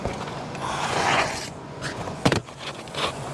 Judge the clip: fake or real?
fake